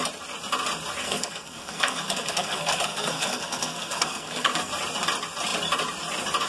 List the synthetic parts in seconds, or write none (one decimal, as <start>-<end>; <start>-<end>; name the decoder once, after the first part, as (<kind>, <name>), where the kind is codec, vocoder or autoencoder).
1.0-4.7 (codec, SNAC)